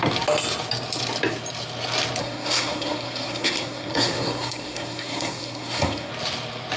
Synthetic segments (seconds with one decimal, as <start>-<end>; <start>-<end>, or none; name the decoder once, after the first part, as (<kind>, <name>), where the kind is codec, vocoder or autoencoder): 2.2-6.1 (codec, SNAC)